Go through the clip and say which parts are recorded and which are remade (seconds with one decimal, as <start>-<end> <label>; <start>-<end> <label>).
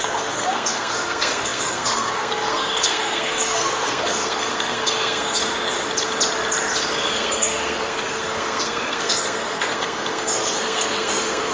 0.0-5.4 remade; 5.4-6.9 recorded; 6.9-11.5 remade